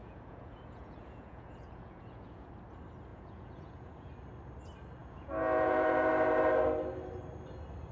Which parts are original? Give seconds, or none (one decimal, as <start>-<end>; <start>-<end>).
2.5-3.1; 4.1-5.0; 6.1-7.9